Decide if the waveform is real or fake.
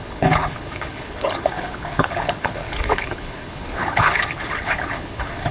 fake